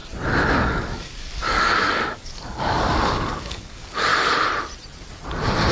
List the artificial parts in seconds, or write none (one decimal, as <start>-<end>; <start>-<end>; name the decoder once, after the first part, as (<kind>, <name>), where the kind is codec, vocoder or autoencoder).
0.5-4.1 (codec, DAC)